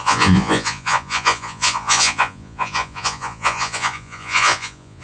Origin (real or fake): fake